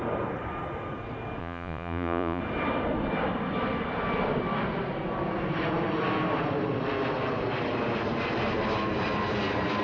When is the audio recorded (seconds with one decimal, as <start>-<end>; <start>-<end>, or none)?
0.0-1.4; 2.4-9.8